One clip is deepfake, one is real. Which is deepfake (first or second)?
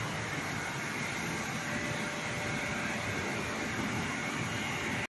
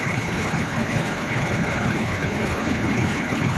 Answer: second